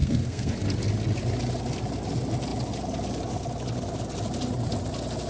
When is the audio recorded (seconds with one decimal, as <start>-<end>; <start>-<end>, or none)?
0.5-5.3